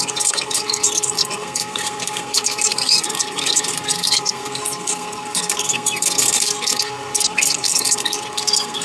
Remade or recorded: remade